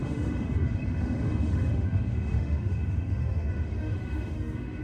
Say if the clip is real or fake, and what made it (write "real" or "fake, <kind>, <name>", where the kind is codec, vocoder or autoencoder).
fake, autoencoder, DAC-VAE